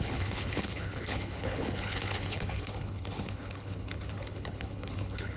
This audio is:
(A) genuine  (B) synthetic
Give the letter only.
B